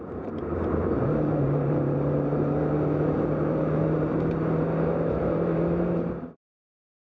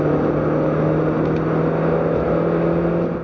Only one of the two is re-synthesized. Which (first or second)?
first